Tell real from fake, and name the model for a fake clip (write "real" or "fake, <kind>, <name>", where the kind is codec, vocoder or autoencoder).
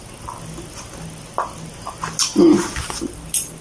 real